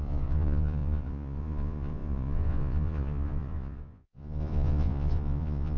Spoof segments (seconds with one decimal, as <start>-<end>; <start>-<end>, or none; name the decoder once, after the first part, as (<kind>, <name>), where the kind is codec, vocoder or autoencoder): 0.0-5.8 (vocoder, Vocos)